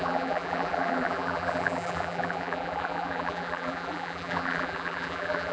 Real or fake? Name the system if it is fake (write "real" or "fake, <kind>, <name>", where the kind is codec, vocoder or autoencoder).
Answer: fake, vocoder, BigVGAN v2